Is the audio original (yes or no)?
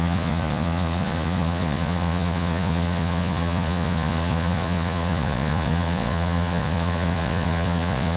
no